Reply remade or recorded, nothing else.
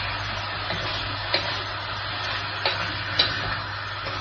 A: recorded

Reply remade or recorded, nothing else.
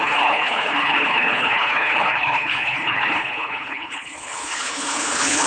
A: remade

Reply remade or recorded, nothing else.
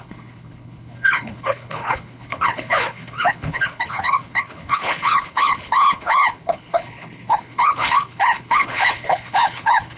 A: remade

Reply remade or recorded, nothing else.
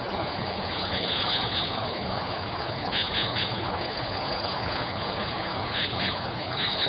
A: remade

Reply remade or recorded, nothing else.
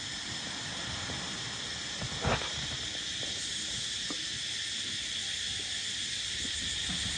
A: recorded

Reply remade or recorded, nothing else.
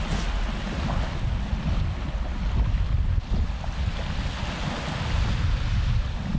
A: recorded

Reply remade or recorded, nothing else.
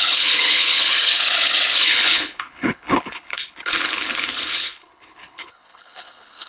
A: remade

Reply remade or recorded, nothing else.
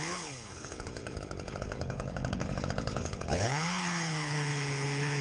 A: remade